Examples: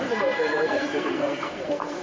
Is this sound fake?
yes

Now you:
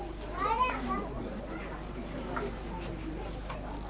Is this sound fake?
no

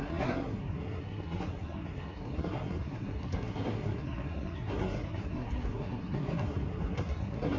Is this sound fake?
yes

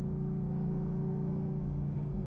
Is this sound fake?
yes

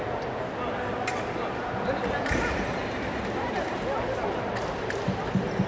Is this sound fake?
no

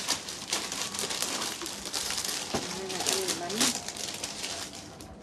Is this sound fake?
yes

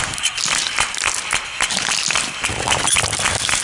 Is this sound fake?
no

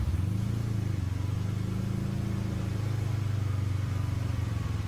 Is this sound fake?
no